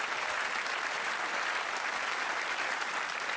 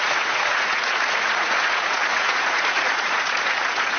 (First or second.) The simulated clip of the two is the second